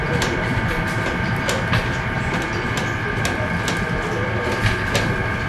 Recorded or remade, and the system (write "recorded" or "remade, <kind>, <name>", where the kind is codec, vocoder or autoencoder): recorded